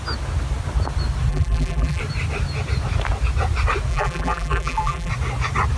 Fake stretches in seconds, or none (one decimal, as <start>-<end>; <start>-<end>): 1.3-2.0; 3.9-5.1